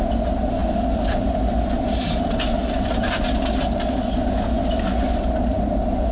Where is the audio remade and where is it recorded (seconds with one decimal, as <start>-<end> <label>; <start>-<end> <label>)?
0.0-6.1 recorded